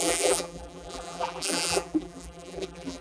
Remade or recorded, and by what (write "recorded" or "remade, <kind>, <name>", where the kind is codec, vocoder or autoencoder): remade, vocoder, BigVGAN v2